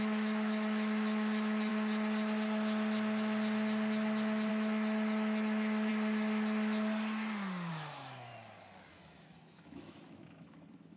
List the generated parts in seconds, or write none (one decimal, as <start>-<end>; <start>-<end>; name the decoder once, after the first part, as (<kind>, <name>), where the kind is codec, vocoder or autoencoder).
0.0-1.7 (autoencoder, DAC-VAE); 4.5-5.9; 7.7-8.3; 8.9-11.0